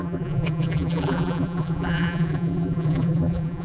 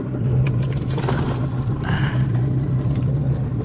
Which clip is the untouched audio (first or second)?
second